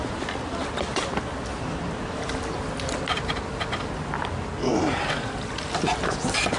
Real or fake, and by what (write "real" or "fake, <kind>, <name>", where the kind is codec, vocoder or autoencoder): real